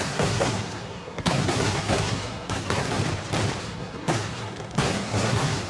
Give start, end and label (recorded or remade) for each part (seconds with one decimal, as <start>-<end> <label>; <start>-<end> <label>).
0.0-3.0 remade; 3.0-3.6 recorded; 3.6-5.7 remade